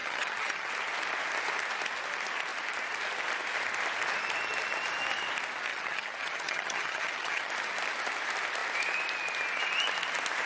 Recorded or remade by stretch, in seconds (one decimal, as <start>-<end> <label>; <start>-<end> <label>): 0.0-0.7 remade; 0.7-5.7 recorded; 5.7-7.5 remade; 7.5-10.5 recorded